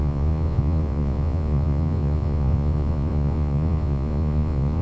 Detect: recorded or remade remade